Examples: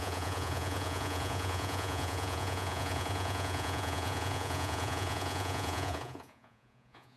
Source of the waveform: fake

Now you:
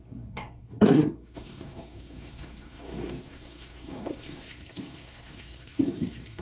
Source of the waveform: fake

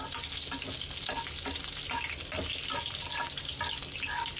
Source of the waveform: real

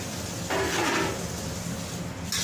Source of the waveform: real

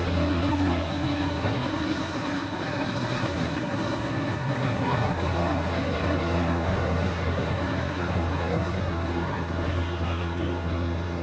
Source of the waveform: fake